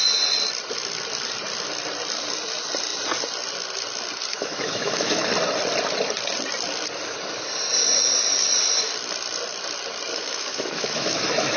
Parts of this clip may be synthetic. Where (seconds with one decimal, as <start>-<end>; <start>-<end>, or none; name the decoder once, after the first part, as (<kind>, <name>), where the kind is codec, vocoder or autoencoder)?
4.3-5.3 (autoencoder, DAC-VAE); 10.1-11.6